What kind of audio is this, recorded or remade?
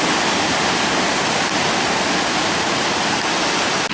recorded